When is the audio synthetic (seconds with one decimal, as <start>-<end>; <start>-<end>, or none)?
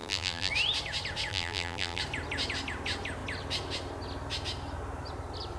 0.0-0.5; 1.3-2.0